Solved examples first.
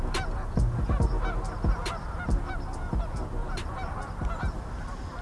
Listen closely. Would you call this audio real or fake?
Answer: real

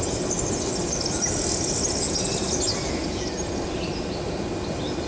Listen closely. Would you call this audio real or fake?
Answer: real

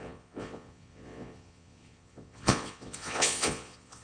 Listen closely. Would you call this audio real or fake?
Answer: fake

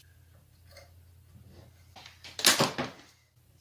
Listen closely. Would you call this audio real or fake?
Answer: real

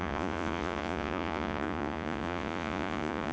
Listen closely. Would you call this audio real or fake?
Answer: fake